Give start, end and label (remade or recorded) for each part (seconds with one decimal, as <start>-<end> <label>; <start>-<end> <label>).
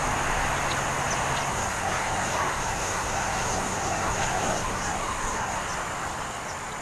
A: 0.0-1.5 recorded; 1.5-5.6 remade; 5.6-6.8 recorded